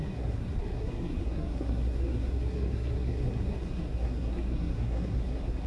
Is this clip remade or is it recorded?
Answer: remade